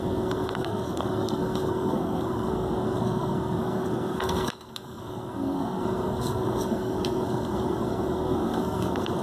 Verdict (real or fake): fake